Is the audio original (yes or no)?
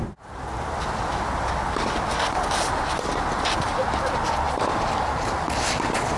yes